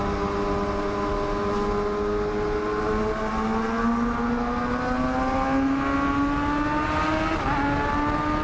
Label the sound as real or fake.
real